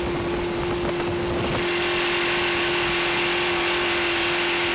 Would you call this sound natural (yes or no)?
yes